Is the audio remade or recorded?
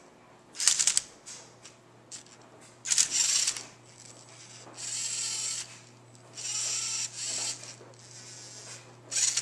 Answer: recorded